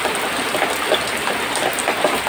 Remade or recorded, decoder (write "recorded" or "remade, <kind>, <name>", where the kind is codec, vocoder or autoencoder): recorded